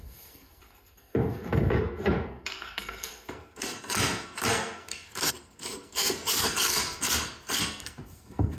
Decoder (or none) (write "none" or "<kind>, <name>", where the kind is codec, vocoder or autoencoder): codec, SNAC